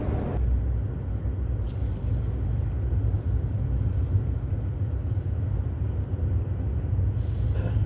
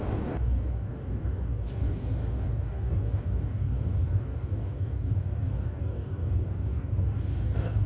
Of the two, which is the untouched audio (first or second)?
first